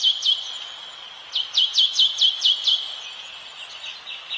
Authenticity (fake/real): real